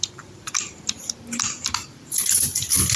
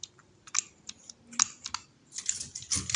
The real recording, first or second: second